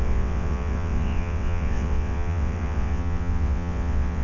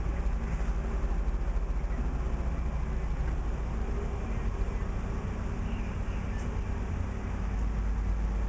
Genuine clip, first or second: second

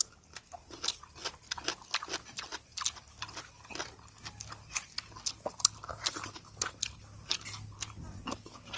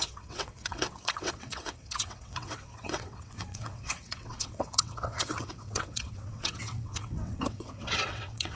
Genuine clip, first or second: first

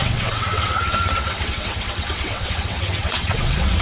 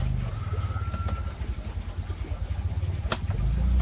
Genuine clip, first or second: second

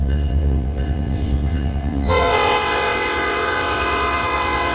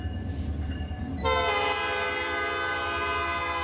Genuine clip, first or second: second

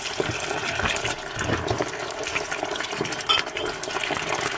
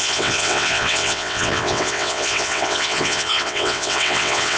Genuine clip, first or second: first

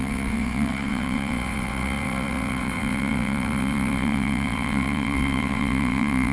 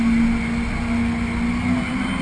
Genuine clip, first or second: second